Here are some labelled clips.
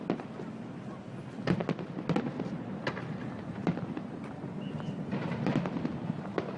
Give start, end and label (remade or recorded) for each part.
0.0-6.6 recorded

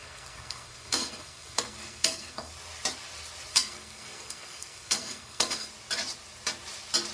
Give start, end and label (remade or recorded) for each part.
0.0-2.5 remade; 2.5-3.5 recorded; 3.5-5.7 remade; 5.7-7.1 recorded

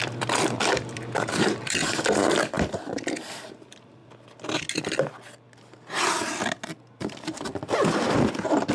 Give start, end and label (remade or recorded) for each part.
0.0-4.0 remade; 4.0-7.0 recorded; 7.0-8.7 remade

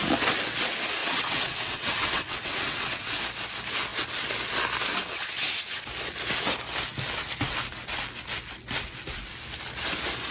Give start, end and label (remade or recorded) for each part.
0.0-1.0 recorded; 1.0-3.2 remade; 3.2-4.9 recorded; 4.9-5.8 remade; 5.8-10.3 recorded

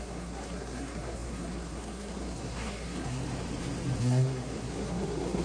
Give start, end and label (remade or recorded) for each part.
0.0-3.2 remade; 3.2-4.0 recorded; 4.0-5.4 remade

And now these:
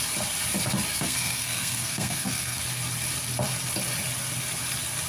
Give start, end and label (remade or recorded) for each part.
0.0-0.9 recorded; 0.9-2.6 remade; 2.6-5.1 recorded